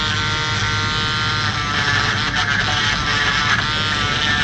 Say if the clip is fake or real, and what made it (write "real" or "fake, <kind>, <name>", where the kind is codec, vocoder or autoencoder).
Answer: real